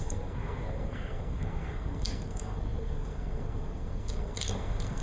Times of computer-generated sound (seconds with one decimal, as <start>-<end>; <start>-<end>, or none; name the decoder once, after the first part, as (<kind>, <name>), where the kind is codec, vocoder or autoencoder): 0.0-5.0 (codec, SNAC)